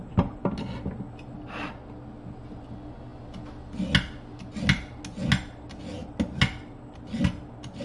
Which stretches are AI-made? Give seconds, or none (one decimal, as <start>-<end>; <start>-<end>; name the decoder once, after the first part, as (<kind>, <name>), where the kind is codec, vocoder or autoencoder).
none